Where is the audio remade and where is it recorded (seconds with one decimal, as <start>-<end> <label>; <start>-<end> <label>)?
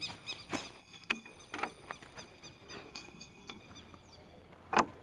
0.0-0.8 recorded; 0.8-1.3 remade; 1.3-2.9 recorded; 2.9-3.6 remade; 3.6-5.0 recorded